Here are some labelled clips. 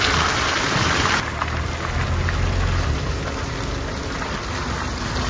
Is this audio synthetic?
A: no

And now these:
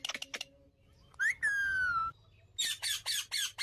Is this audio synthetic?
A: no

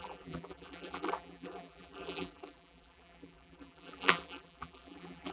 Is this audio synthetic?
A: yes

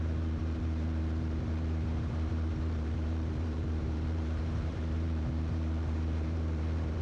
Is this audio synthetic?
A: yes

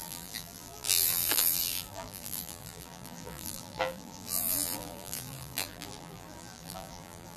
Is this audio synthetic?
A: yes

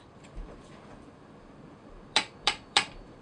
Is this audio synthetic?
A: yes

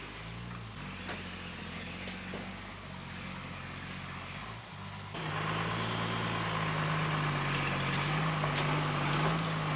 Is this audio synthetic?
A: no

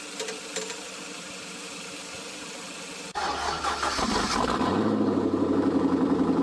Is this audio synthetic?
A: yes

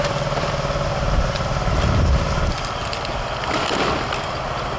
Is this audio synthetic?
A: yes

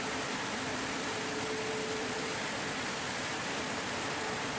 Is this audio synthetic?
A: yes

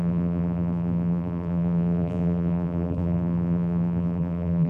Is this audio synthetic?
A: yes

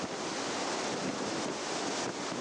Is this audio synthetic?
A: no